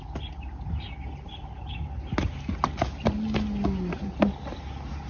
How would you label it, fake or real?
real